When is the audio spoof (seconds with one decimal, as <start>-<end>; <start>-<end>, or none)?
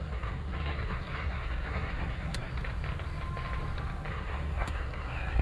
0.0-2.5; 4.1-5.4